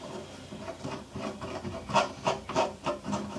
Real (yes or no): no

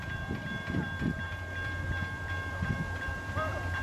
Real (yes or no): no